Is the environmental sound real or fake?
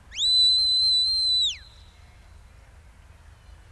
real